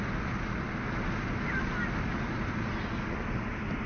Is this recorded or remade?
recorded